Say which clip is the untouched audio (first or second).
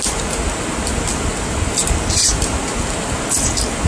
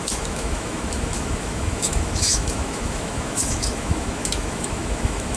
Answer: first